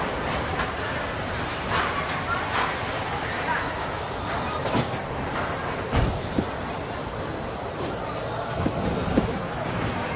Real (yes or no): yes